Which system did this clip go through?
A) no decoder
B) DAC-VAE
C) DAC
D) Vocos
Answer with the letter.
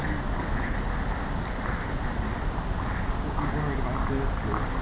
A